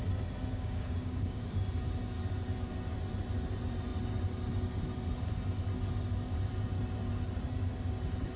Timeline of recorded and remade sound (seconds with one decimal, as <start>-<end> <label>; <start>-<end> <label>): 0.0-0.5 recorded; 0.5-1.5 remade; 1.5-8.4 recorded